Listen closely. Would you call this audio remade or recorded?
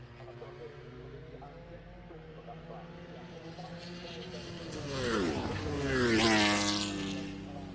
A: recorded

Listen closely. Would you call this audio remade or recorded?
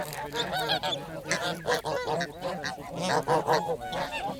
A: recorded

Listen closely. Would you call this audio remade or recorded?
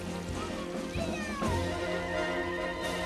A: recorded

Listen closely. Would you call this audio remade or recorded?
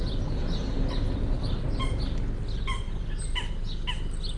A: recorded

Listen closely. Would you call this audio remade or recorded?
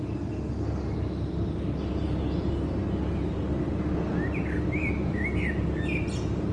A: recorded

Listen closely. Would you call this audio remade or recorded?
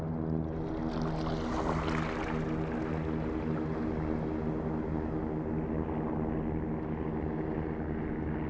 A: recorded